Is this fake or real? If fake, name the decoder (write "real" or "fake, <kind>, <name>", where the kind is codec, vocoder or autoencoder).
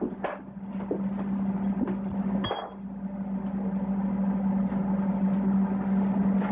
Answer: real